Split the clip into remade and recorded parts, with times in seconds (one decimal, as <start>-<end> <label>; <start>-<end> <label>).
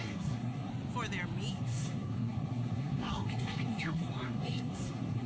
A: 0.0-0.7 remade; 0.7-1.5 recorded; 1.5-5.3 remade